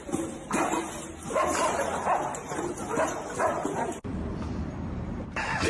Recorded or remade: recorded